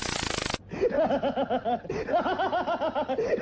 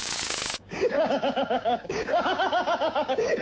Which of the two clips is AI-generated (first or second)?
second